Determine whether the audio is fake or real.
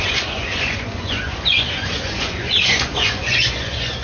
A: fake